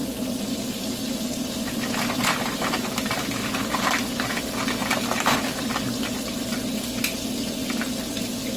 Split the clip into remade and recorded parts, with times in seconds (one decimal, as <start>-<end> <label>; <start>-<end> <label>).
0.0-3.6 remade; 3.6-4.8 recorded; 4.8-8.6 remade